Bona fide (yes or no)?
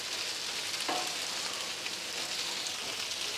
yes